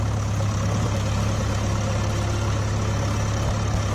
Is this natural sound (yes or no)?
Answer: yes